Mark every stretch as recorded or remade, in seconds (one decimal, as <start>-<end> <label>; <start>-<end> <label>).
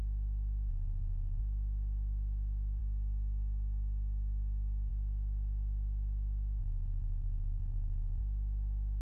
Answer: 0.0-0.7 recorded; 0.7-1.4 remade; 1.4-6.6 recorded; 6.6-8.2 remade; 8.2-9.0 recorded